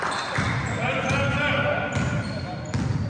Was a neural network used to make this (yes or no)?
no